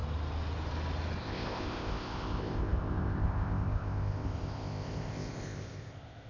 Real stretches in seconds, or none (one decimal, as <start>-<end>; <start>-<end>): 0.0-1.2